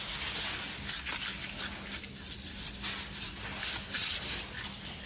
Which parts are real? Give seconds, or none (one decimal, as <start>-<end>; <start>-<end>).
0.0-5.1